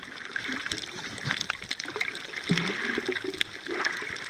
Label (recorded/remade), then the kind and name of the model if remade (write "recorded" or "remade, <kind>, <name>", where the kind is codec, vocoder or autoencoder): recorded